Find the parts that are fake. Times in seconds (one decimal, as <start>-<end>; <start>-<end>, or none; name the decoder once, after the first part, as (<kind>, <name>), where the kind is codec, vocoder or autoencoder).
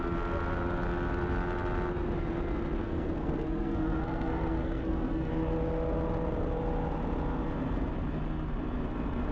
2.8-5.3 (codec, SNAC)